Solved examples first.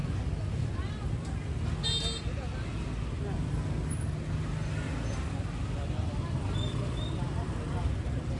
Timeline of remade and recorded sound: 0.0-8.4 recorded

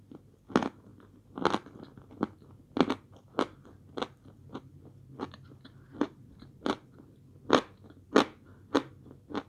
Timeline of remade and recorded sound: 0.0-5.9 recorded; 5.9-7.2 remade; 7.2-9.5 recorded

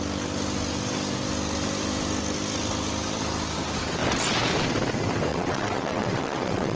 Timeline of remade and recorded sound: 0.0-5.3 recorded; 5.3-6.8 remade

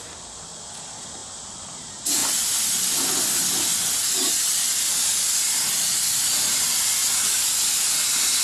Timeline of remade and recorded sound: 0.0-8.4 recorded